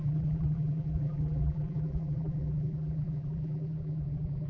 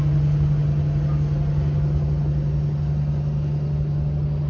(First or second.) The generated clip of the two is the first